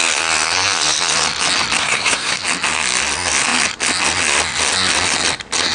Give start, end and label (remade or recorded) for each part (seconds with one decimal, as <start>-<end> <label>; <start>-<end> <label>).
0.0-1.8 recorded; 1.8-2.4 remade; 2.4-5.7 recorded